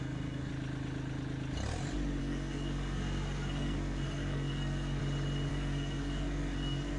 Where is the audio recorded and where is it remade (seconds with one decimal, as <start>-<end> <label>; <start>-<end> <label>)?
0.0-0.5 remade; 0.5-2.2 recorded; 2.2-5.0 remade; 5.0-5.5 recorded; 5.5-7.0 remade